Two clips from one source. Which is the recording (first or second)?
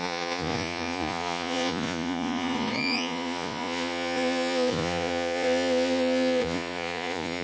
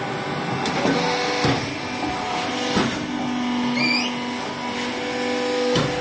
second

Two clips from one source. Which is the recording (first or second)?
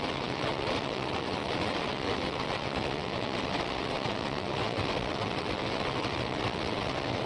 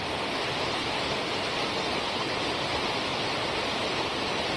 second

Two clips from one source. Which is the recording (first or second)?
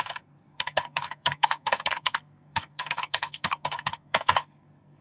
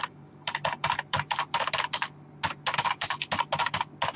second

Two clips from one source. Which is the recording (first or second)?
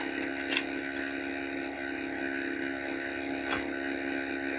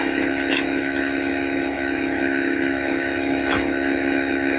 first